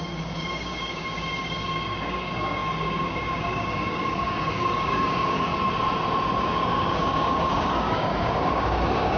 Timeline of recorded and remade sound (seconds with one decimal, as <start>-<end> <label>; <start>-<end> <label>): 0.0-5.5 remade; 5.5-6.4 recorded; 6.4-9.2 remade